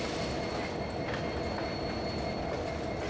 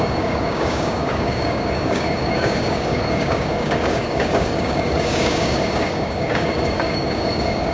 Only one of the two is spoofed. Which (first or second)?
second